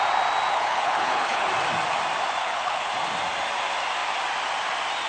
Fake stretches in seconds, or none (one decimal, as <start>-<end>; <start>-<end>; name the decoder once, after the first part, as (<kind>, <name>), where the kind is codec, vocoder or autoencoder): 0.5-1.5 (codec, HILCodec); 2.4-2.9